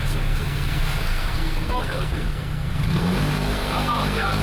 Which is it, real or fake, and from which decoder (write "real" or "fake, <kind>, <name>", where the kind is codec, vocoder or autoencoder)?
fake, codec, SNAC